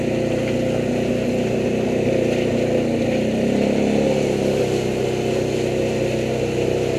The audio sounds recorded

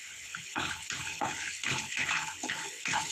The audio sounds remade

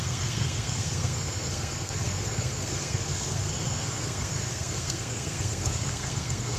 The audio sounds remade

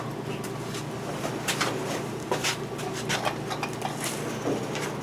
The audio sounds recorded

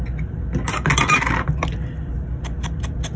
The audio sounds recorded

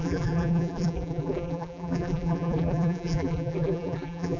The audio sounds remade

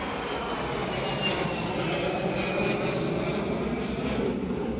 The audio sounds recorded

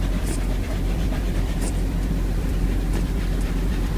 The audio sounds remade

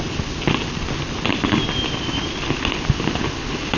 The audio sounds recorded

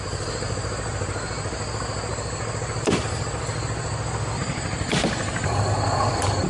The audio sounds recorded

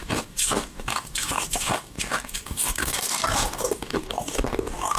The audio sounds remade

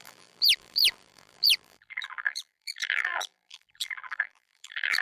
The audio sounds remade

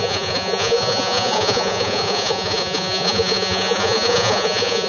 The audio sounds remade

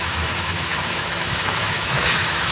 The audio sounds remade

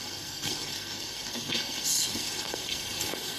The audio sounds remade